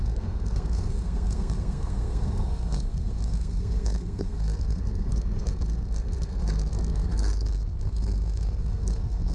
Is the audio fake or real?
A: fake